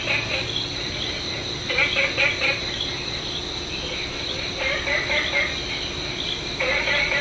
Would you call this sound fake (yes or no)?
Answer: no